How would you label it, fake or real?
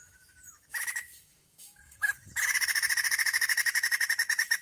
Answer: fake